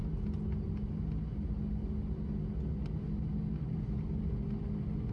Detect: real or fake real